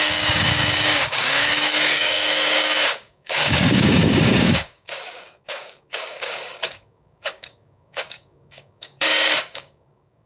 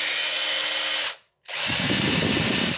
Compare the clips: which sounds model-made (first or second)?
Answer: first